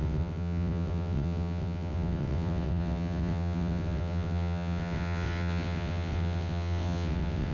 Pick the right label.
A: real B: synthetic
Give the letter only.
B